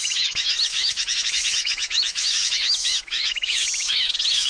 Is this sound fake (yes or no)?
yes